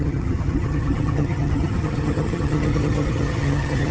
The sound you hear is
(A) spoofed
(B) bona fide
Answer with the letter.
A